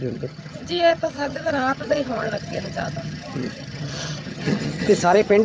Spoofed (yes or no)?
yes